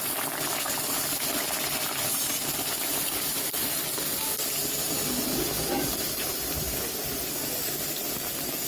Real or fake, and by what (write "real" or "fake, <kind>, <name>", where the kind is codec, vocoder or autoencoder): real